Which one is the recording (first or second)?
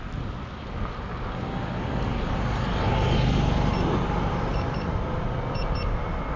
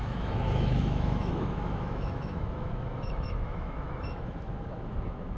first